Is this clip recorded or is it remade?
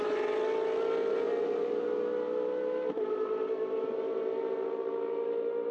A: recorded